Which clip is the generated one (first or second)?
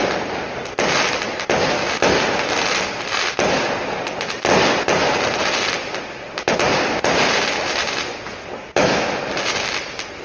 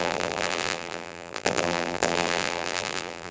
second